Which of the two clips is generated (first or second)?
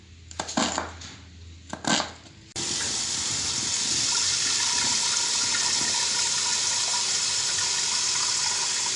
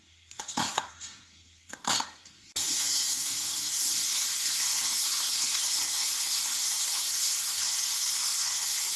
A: second